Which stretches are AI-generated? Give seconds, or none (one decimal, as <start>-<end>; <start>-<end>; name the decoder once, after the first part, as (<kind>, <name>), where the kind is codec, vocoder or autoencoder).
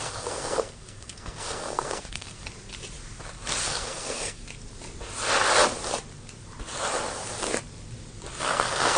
0.0-2.4 (codec, SNAC); 3.6-4.4; 8.4-9.0